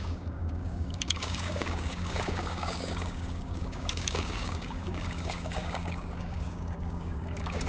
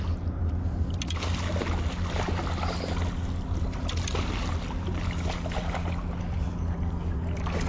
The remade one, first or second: first